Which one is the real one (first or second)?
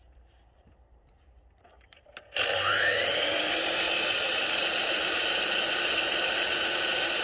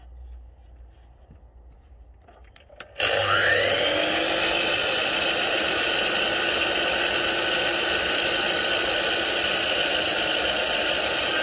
second